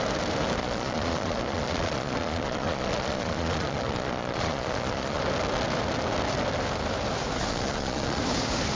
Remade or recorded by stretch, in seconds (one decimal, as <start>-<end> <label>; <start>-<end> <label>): 0.0-0.6 recorded; 0.6-5.2 remade; 5.2-7.5 recorded; 7.5-8.2 remade; 8.2-8.7 recorded